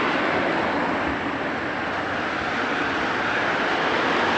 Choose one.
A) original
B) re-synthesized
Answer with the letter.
B